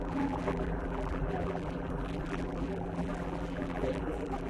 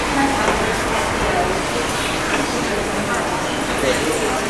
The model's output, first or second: first